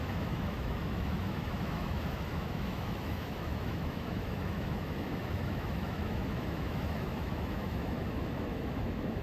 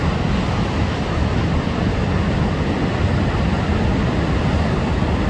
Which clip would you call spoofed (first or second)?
first